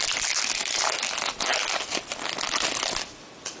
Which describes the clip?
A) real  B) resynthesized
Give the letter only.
A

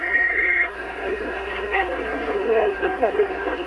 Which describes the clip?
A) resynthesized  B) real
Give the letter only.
A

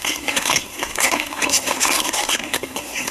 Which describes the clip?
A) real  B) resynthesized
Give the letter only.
B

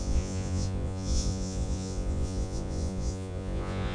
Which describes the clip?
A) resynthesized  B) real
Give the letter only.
A